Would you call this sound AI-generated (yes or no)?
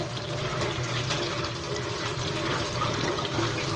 yes